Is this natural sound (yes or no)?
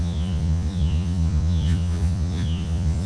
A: no